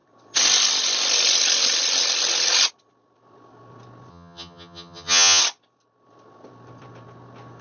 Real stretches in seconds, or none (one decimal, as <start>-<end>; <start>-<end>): 0.0-4.1; 5.4-7.6